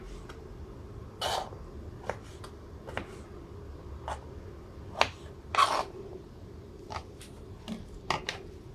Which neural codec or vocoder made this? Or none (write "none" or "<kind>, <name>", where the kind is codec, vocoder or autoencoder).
none